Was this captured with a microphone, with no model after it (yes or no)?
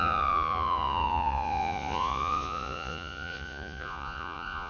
no